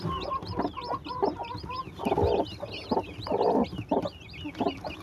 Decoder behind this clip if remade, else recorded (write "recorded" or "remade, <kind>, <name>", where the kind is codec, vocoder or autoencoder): recorded